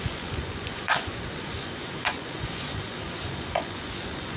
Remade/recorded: remade